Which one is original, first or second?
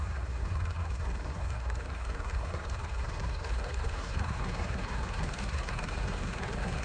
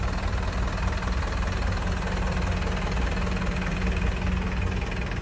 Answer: second